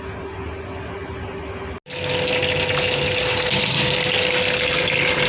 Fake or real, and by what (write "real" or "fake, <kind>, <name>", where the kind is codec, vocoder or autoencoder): real